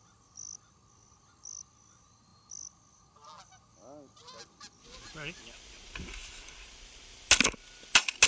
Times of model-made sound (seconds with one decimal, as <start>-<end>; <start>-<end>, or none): none

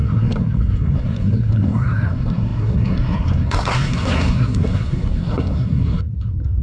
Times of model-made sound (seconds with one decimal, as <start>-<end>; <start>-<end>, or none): 0.0-6.6

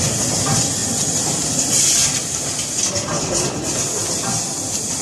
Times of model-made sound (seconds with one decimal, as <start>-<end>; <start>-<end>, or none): none